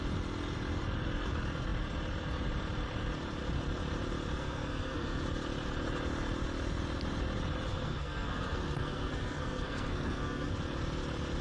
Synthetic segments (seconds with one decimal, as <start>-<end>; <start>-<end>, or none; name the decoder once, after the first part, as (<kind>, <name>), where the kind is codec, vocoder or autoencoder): 4.4-5.2 (codec, SNAC); 7.7-10.5